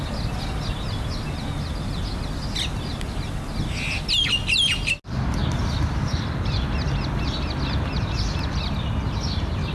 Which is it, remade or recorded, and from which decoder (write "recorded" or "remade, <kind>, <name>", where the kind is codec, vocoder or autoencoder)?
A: recorded